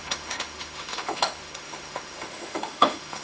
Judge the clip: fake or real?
fake